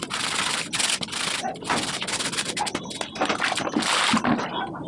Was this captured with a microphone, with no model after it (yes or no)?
yes